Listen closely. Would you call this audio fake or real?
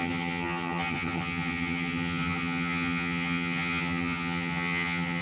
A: fake